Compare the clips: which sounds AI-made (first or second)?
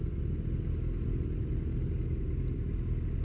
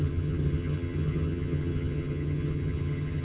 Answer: second